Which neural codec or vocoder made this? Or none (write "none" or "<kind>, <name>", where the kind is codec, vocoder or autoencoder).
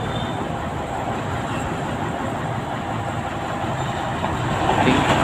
none